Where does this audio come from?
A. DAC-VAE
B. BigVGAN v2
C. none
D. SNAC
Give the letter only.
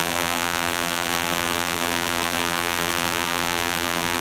B